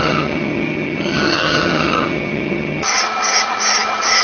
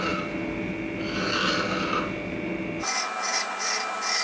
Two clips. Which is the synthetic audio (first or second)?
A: first